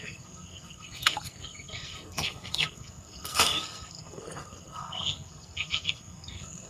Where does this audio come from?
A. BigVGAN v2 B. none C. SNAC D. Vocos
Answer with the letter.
C